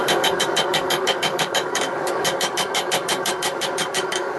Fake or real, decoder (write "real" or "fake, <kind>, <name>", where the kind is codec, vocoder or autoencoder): fake, codec, DAC